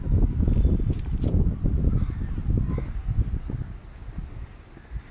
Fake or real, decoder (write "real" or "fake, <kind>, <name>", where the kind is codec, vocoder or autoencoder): real